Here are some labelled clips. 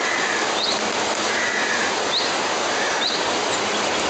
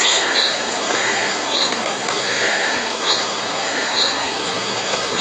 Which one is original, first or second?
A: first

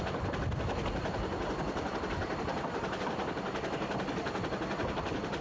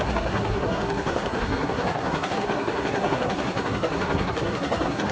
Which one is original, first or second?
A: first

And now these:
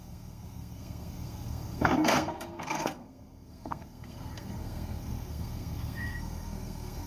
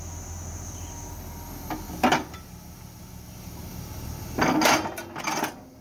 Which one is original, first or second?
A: second